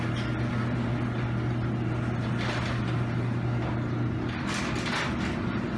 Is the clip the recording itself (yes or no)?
yes